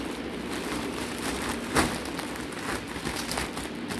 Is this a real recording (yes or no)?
yes